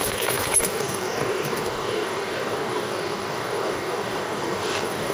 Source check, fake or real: fake